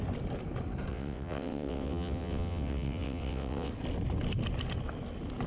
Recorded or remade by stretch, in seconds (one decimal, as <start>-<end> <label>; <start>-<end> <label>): 0.0-0.9 recorded; 0.9-3.7 remade; 3.7-5.5 recorded